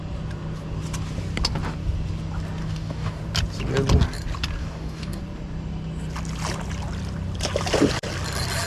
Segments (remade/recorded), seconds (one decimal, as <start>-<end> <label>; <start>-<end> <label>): 0.0-2.6 recorded; 2.6-3.2 remade; 3.2-4.6 recorded; 4.6-5.2 remade; 5.2-8.7 recorded